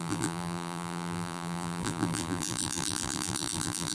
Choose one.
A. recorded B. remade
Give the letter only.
B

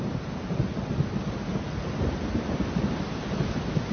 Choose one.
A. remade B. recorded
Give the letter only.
B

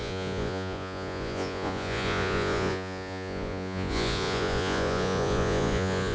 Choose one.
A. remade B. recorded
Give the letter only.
A